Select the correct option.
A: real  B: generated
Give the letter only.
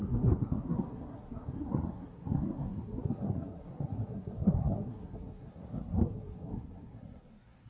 B